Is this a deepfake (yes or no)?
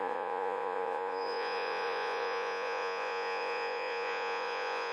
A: yes